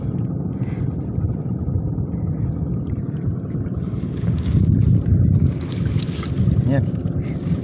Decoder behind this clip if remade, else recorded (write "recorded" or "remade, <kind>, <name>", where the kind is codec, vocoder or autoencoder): recorded